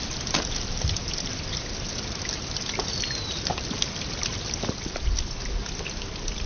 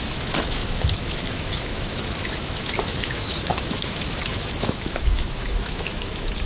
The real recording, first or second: first